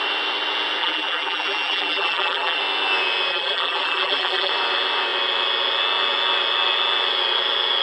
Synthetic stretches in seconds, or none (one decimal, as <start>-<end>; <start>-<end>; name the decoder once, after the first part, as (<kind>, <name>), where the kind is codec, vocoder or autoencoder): 0.8-2.6 (vocoder, BigVGAN v2); 3.3-4.5